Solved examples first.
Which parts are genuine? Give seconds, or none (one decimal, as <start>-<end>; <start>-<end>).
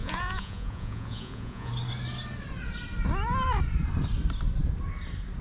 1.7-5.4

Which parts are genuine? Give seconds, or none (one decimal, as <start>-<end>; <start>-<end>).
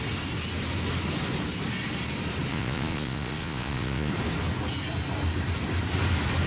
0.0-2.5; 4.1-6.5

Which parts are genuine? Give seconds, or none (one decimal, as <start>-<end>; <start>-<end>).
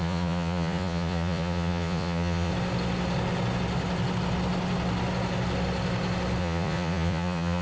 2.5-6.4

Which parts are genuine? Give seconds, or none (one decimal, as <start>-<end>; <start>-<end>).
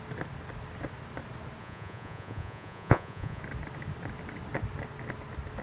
0.0-1.6; 3.4-5.6